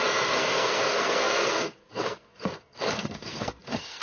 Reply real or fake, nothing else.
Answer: fake